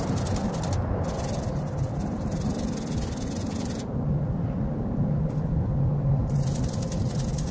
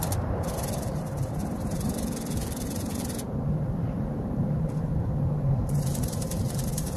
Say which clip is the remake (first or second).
second